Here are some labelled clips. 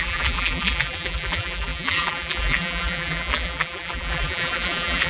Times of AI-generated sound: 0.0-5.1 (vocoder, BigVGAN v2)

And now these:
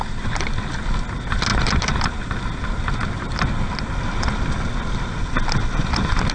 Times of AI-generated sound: none

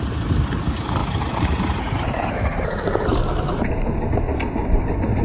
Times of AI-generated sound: 1.0-4.1 (vocoder, BigVGAN v2)

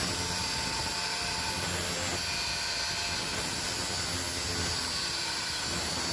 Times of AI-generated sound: 0.0-0.9 (vocoder, BigVGAN v2); 4.6-6.1

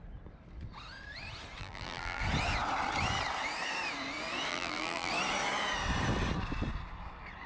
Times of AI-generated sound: 1.6-2.2 (vocoder, BigVGAN v2); 4.5-5.1